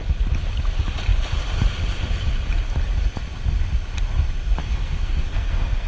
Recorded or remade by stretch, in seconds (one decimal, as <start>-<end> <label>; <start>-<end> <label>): 0.0-4.6 recorded; 4.6-5.9 remade